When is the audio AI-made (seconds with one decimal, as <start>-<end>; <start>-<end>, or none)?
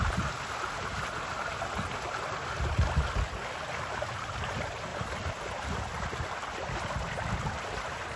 4.9-5.5